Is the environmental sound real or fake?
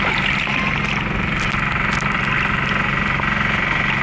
real